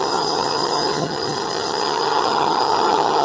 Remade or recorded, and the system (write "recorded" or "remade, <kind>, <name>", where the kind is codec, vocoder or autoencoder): remade, vocoder, HiFi-GAN